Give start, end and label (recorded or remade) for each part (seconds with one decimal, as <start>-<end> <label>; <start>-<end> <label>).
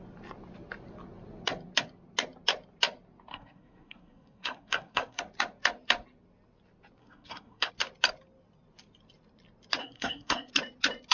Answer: 0.0-3.3 recorded; 3.3-5.2 remade; 5.2-7.0 recorded; 7.0-7.7 remade; 7.7-9.8 recorded; 9.8-10.5 remade; 10.5-11.1 recorded